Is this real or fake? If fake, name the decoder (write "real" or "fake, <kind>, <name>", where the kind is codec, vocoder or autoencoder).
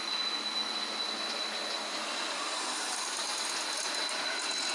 real